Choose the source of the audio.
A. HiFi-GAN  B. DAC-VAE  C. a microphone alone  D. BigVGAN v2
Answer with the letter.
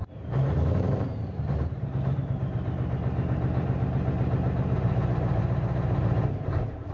D